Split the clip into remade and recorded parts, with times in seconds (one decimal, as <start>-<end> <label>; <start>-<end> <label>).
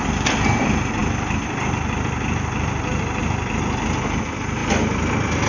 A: 0.0-5.5 recorded